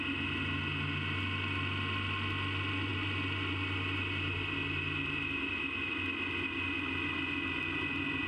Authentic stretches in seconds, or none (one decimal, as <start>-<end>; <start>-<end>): 0.0-8.3